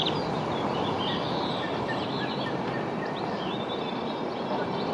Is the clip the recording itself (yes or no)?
yes